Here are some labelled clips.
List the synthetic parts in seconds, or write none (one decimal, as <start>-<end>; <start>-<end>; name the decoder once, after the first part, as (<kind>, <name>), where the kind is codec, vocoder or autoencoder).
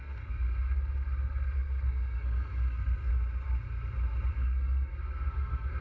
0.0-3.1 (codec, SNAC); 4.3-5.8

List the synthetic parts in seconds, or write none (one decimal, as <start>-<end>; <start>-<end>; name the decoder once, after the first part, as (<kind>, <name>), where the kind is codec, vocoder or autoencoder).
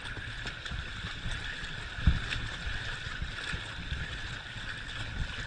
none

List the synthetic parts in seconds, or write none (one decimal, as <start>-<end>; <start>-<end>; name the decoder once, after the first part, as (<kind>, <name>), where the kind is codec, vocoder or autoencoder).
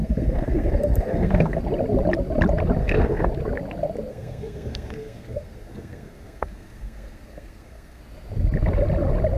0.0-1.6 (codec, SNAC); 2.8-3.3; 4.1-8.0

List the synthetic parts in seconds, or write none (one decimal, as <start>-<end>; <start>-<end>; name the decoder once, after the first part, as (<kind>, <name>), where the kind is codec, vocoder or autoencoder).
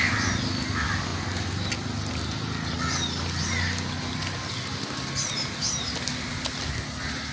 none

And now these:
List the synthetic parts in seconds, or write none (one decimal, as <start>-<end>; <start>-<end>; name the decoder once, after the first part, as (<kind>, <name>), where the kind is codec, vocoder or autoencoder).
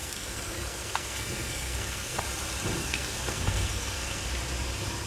0.0-2.2 (codec, SNAC); 2.8-4.3